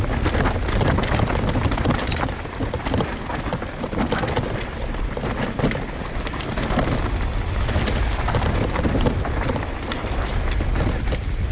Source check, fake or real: real